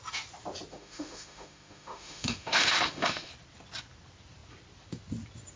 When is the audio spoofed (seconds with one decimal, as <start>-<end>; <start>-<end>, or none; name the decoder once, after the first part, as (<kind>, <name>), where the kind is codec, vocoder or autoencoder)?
0.7-3.3 (autoencoder, DAC-VAE)